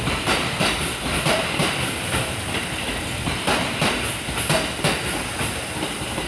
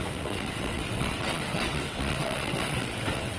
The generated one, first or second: second